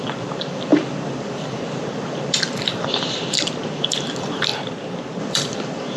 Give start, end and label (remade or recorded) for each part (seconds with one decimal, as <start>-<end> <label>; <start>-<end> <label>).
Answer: 0.0-4.5 remade; 4.5-5.2 recorded; 5.2-6.0 remade